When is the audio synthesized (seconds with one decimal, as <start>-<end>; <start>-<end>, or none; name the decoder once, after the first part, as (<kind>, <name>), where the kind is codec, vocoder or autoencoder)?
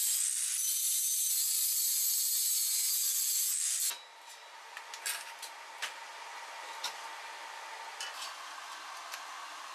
none